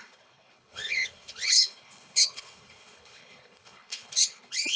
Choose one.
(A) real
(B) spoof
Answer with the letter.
B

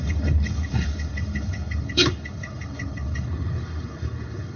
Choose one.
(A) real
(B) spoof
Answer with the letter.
B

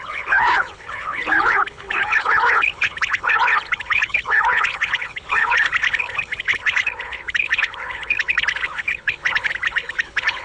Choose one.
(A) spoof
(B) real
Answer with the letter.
A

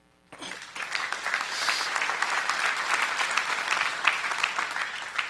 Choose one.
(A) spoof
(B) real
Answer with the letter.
B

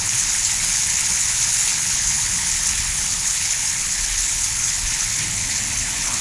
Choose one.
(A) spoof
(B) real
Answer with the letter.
A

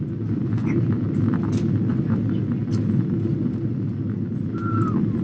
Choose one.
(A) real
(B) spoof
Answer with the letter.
A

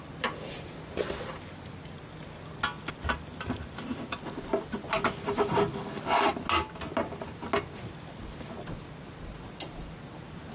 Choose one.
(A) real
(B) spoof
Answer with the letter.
A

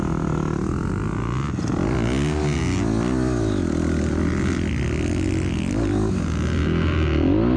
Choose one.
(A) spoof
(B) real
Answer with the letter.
B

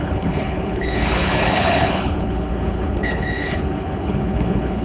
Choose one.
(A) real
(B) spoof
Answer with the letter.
B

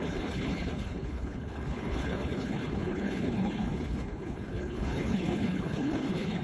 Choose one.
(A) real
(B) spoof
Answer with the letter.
B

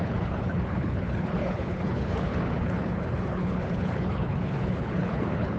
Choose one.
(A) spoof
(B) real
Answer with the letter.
A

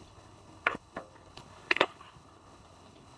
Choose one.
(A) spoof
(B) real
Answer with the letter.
A